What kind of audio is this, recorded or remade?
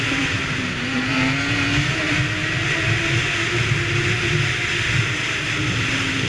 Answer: recorded